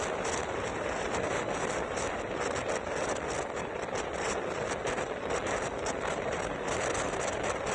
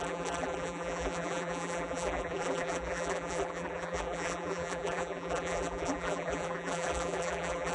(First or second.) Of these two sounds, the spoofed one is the second